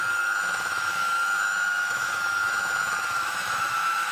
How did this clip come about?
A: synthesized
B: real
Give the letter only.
A